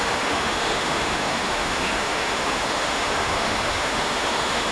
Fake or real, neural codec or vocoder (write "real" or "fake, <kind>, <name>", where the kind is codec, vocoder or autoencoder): fake, autoencoder, DAC-VAE